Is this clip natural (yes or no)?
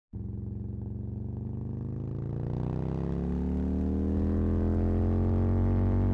yes